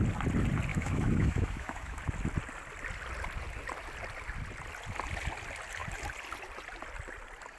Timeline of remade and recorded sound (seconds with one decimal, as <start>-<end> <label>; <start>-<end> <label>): 0.0-0.7 recorded; 0.7-2.0 remade; 2.0-7.6 recorded